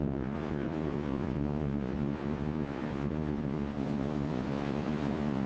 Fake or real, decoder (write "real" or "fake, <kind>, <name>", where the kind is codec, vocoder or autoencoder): fake, vocoder, Vocos